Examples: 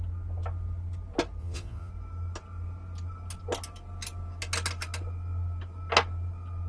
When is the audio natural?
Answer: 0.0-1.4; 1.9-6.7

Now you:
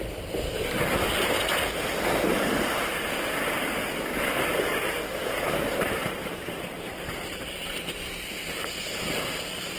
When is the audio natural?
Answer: 0.0-2.3; 3.1-5.2

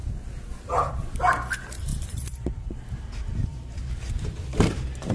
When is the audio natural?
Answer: 0.0-5.1

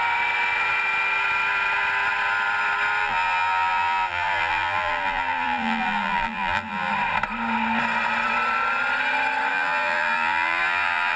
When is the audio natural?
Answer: 0.0-3.0; 6.9-9.5

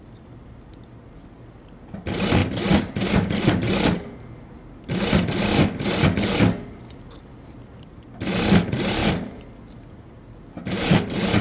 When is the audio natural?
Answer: 0.0-11.4